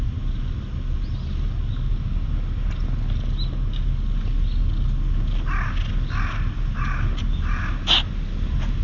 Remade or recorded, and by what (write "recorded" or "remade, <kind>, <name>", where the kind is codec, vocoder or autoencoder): recorded